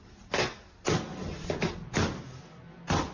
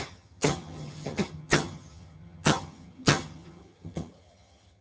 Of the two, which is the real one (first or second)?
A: first